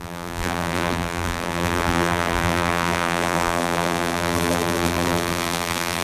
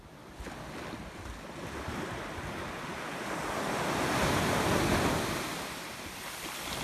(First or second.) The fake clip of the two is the first